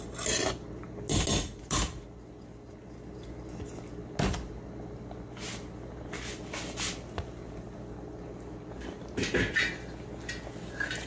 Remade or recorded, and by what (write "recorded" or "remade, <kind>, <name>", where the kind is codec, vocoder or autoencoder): recorded